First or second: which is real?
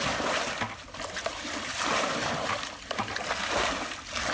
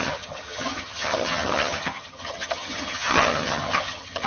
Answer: first